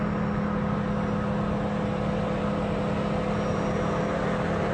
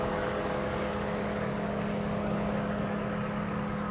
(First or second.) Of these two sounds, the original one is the first